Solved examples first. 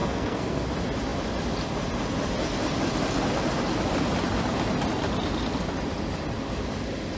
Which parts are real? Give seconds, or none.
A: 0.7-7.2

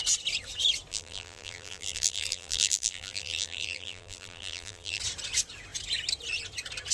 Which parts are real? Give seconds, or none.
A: 0.0-0.9; 5.0-6.9

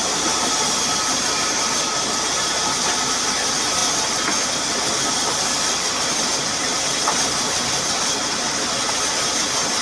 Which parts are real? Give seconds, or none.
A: 0.0-9.8

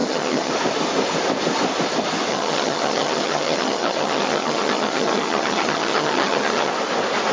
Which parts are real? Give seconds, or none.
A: 0.5-2.3; 6.7-7.3

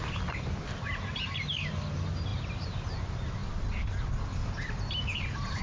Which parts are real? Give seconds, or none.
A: 0.0-2.3; 2.9-5.6